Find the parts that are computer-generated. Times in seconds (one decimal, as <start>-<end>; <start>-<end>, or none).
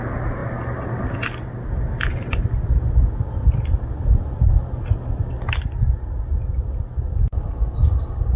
none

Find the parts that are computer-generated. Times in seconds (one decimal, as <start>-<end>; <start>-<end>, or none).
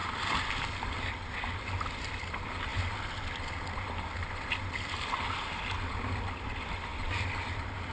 none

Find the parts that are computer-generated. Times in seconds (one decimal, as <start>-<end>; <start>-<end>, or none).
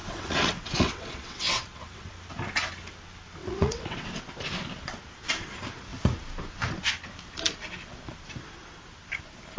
0.0-2.1; 3.4-4.2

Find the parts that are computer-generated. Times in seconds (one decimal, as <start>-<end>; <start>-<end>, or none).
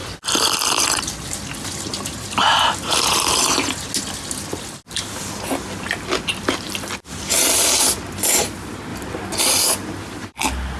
1.3-1.9; 6.3-8.9; 9.4-10.8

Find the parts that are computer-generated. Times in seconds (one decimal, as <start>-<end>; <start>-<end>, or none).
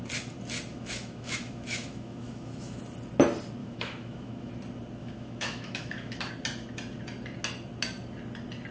0.7-2.8; 3.6-4.5; 5.0-6.3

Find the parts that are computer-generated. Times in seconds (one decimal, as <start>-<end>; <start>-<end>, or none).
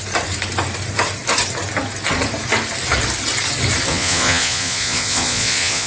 3.9-5.9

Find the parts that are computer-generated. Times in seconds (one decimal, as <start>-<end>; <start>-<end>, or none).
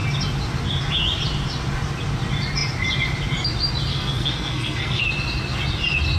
3.9-5.0